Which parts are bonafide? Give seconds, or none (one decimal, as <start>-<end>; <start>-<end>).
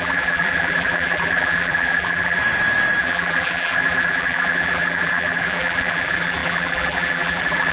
2.4-3.0